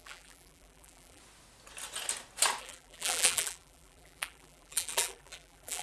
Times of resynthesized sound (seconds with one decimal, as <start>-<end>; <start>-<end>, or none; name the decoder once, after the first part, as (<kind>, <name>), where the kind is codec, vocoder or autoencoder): 0.0-1.2 (vocoder, BigVGAN v2); 2.6-5.8